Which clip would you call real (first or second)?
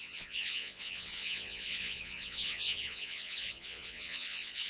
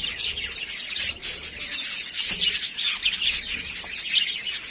second